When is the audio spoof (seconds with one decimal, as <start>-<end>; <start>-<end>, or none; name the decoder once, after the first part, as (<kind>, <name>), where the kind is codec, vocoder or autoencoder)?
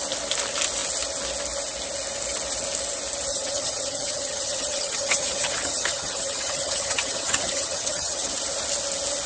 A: 3.3-8.3 (vocoder, HiFi-GAN)